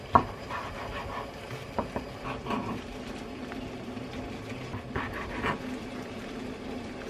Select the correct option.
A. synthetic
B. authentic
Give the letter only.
B